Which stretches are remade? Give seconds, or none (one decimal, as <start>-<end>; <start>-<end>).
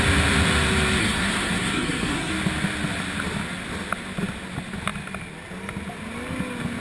1.0-2.3